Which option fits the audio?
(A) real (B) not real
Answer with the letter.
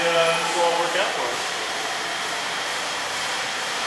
B